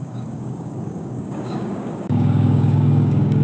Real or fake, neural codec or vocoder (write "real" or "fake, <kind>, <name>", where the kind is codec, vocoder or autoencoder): fake, codec, DAC